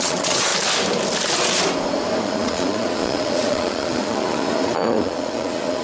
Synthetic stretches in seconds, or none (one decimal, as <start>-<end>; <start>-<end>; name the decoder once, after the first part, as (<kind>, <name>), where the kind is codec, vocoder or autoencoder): 0.0-0.5 (vocoder, Vocos); 2.2-5.8